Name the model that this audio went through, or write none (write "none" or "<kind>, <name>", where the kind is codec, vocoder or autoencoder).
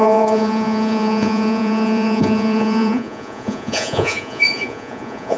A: vocoder, Vocos